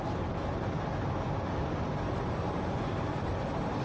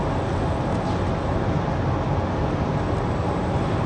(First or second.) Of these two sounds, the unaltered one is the second